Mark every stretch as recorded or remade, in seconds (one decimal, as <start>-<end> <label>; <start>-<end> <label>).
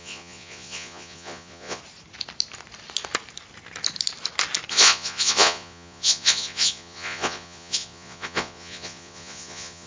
0.0-1.8 remade; 1.8-4.7 recorded; 4.7-9.9 remade